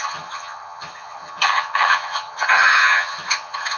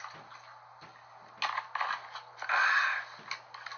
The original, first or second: second